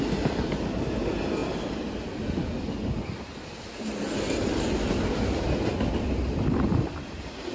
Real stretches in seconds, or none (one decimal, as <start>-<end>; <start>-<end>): 0.0-7.5